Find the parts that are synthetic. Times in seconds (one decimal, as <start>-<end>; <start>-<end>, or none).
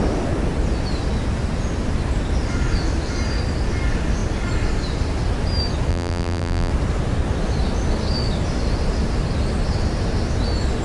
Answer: 5.9-6.7